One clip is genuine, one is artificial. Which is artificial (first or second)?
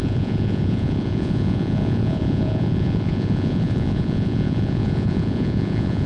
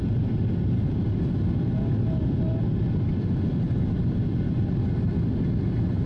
first